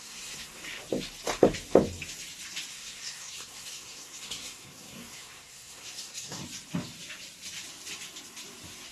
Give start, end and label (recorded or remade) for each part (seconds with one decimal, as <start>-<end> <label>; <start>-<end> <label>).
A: 0.0-0.6 remade; 0.6-2.7 recorded; 2.7-6.4 remade; 6.4-8.9 recorded